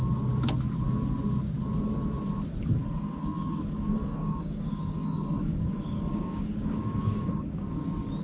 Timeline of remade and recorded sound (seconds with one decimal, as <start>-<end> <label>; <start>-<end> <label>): 0.0-2.8 recorded; 2.8-7.7 remade; 7.7-8.2 recorded